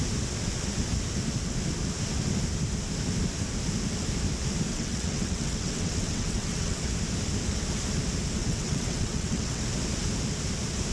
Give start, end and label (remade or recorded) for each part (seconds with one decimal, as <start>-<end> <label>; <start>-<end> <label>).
0.0-4.7 recorded; 4.7-6.8 remade; 6.8-8.4 recorded; 8.4-9.6 remade; 9.6-10.9 recorded

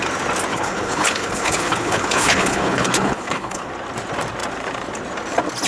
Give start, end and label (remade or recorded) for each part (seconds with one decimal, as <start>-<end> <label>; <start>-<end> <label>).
0.0-0.5 recorded; 0.5-3.7 remade; 3.7-5.7 recorded

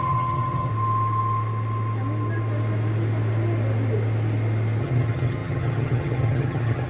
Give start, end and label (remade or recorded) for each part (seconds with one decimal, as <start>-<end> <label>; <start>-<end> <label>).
0.0-0.7 remade; 0.7-4.8 recorded; 4.8-6.9 remade

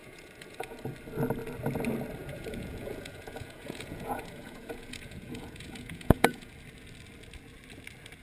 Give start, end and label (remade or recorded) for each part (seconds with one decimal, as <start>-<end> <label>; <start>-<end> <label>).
0.0-0.8 remade; 0.8-2.2 recorded; 2.2-6.5 remade; 6.5-8.2 recorded

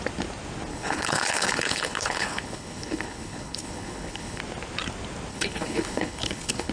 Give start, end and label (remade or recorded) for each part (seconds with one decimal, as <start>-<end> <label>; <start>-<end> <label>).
0.0-0.7 recorded; 0.7-4.4 remade; 4.4-5.3 recorded; 5.3-6.7 remade

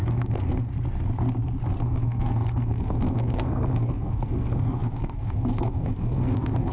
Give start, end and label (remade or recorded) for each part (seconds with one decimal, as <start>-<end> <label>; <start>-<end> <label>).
0.0-0.7 remade; 0.7-1.8 recorded; 1.8-6.7 remade

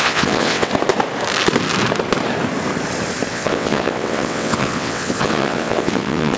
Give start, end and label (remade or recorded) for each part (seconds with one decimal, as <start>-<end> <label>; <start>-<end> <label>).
0.0-0.7 remade; 0.7-3.3 recorded; 3.3-6.4 remade